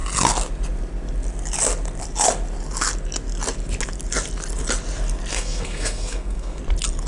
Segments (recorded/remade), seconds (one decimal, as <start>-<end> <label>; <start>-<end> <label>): 0.0-5.3 recorded; 5.3-6.6 remade; 6.6-7.1 recorded